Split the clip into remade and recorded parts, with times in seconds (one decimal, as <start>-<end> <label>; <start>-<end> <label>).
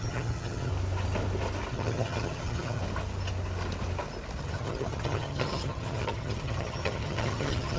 0.0-0.7 remade; 0.7-1.7 recorded; 1.7-2.8 remade; 2.8-4.4 recorded; 4.4-7.8 remade